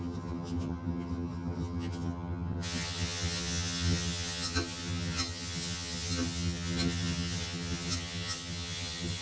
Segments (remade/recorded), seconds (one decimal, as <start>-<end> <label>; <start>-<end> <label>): 0.0-9.2 remade